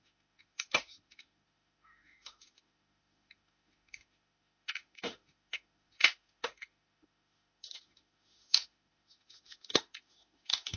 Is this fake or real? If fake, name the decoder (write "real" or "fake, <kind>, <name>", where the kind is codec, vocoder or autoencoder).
fake, autoencoder, DAC-VAE